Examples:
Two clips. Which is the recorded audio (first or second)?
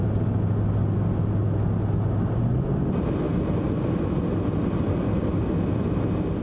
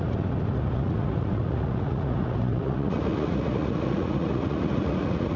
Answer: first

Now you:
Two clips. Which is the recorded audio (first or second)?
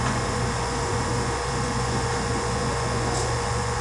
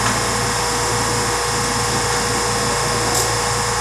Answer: second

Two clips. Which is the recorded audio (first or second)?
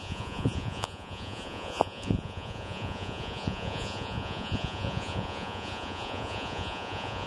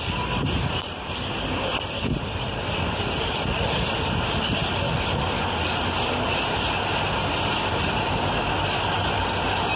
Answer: second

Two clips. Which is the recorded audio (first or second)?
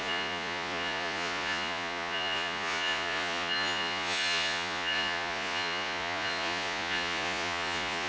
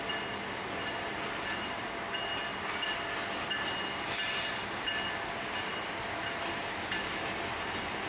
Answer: second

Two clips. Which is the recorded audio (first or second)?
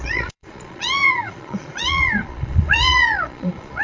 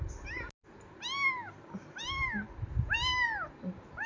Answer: second